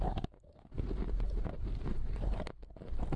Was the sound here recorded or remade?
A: recorded